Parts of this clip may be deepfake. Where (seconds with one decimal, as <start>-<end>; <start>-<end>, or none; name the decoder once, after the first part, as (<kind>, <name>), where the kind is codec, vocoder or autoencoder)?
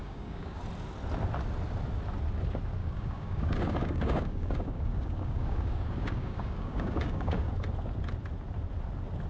0.0-0.6 (codec, DAC); 2.8-7.5